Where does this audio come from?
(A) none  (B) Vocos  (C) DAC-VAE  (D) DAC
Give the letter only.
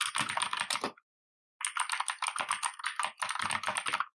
A